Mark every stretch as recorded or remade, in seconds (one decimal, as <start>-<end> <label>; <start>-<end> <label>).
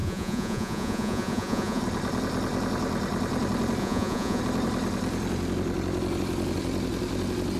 0.0-1.8 remade; 1.8-3.8 recorded; 3.8-4.4 remade; 4.4-7.6 recorded